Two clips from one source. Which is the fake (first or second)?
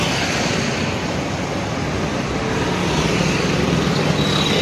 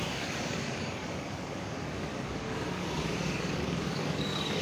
second